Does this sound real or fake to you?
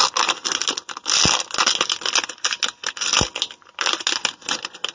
real